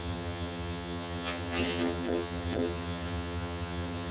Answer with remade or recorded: remade